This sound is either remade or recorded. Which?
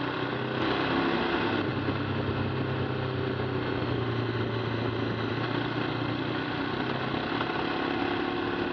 recorded